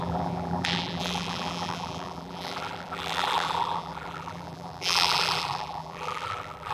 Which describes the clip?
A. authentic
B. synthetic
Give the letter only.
B